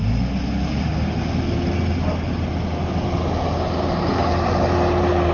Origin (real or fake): real